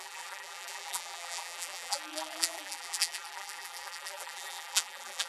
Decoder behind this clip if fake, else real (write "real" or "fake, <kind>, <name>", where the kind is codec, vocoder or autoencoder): fake, vocoder, BigVGAN v2